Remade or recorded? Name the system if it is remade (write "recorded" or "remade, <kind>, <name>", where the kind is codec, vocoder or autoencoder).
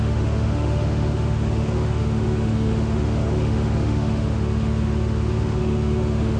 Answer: remade, autoencoder, DAC-VAE